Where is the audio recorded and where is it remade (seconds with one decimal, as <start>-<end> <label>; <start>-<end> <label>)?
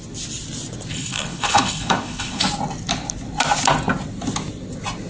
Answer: 0.0-0.9 recorded; 0.9-2.4 remade; 2.4-5.1 recorded